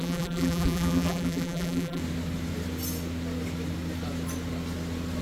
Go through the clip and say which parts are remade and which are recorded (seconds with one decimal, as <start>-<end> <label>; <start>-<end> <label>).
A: 0.0-2.0 remade; 2.0-5.2 recorded